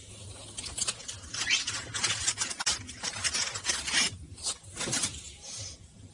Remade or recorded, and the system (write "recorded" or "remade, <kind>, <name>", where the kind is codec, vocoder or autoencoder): recorded